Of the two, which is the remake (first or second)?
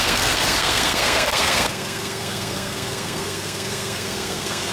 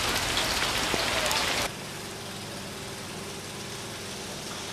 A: first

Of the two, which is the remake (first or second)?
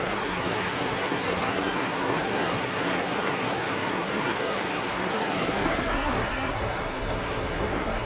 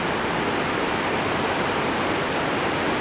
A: first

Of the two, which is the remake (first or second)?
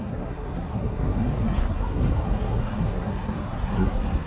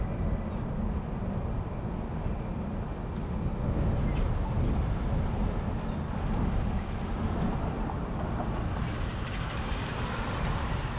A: first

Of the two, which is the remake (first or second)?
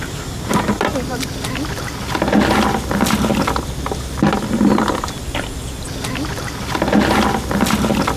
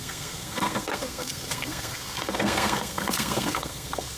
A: second